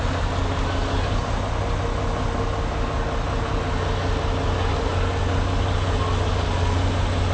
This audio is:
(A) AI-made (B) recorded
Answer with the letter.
B